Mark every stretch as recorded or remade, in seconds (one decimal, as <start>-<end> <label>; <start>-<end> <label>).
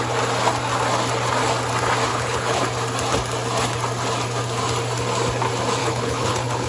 0.0-2.1 recorded; 2.1-2.6 remade; 2.6-5.8 recorded; 5.8-6.7 remade